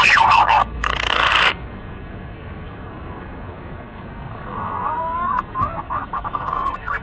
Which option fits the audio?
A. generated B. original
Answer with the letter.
A